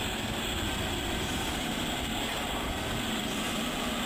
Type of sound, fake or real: real